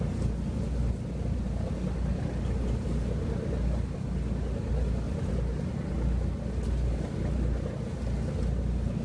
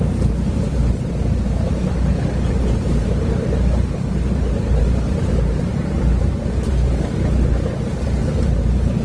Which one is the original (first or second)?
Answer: first